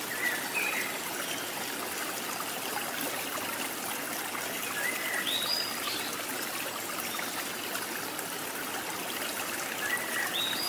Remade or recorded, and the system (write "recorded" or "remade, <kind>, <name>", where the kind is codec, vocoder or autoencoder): recorded